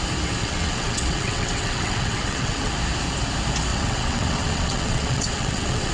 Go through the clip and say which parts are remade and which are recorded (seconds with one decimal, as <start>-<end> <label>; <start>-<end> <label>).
0.0-0.4 recorded; 0.4-2.7 remade; 2.7-3.7 recorded; 3.7-5.9 remade